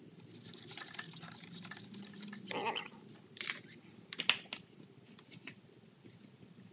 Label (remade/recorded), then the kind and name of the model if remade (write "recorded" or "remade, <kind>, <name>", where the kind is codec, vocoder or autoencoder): recorded